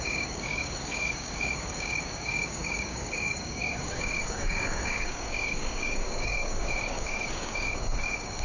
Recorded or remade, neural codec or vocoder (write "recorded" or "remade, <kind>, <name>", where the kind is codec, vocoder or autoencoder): remade, codec, DAC